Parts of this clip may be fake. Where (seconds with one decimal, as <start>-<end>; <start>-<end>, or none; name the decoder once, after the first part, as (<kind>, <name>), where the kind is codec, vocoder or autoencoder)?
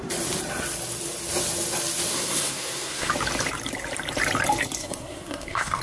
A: 2.1-3.1 (codec, SNAC); 4.8-5.8